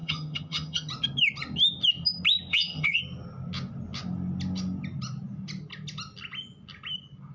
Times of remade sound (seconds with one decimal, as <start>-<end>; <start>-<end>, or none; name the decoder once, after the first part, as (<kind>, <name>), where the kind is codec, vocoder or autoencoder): 0.0-0.9 (vocoder, HiFi-GAN); 2.5-3.0